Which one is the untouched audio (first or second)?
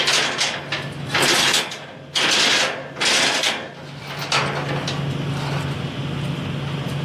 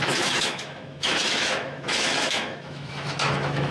first